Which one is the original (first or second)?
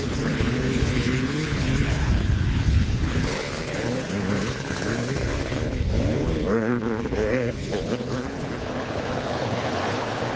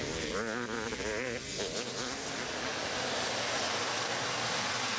second